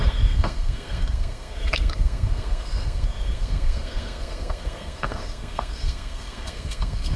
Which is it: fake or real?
fake